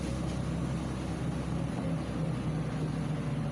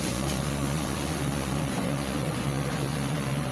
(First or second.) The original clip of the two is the first